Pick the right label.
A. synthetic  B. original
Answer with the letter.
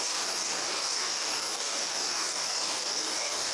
A